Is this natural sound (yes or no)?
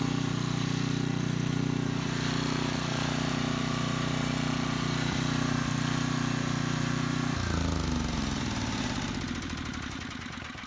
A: no